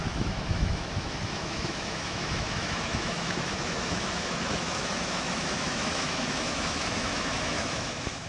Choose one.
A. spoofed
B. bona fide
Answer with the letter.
A